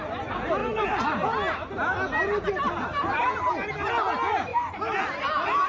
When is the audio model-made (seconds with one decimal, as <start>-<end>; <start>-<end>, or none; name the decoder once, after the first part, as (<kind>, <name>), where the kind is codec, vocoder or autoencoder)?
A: none